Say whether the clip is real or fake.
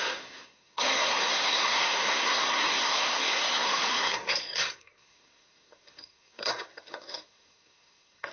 fake